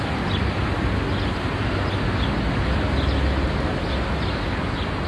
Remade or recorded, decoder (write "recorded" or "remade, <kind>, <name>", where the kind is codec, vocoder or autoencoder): recorded